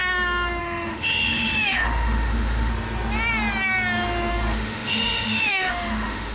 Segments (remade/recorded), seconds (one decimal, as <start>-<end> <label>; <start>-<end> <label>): 0.0-0.6 recorded; 0.6-2.7 remade; 2.7-4.3 recorded; 4.3-6.3 remade